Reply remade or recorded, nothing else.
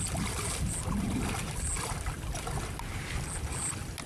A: recorded